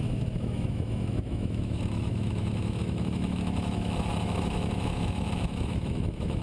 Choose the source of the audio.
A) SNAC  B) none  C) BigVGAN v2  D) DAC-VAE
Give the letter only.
D